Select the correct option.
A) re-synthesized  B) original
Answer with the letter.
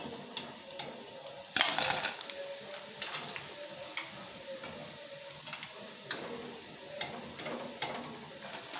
B